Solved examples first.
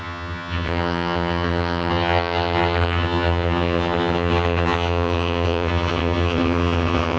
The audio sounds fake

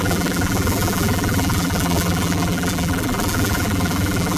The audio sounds fake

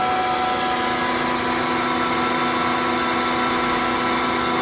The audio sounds real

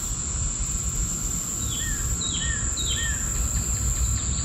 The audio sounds real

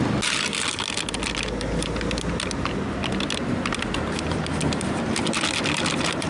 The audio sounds real